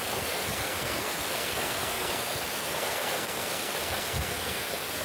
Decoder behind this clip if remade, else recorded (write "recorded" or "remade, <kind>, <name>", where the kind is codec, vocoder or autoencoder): remade, codec, SNAC